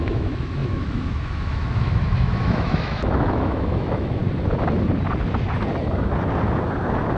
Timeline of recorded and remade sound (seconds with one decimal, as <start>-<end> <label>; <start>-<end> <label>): 0.0-4.2 remade; 4.2-7.2 recorded